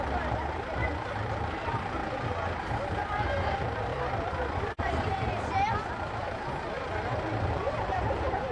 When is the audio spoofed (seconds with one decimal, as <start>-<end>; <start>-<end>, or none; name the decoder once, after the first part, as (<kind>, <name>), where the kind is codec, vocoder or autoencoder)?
0.0-2.0 (vocoder, BigVGAN v2); 3.5-3.9; 4.6-5.3; 7.5-8.5